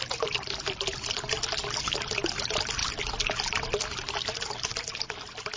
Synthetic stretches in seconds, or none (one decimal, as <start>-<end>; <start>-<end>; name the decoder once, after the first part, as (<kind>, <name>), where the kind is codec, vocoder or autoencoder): none